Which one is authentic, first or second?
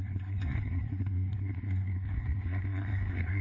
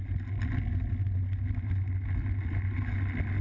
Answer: second